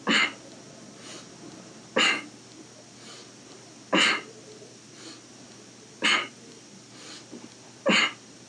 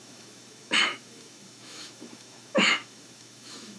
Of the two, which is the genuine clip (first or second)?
first